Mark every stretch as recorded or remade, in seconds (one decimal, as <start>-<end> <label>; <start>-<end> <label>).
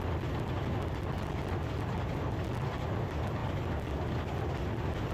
0.0-5.1 recorded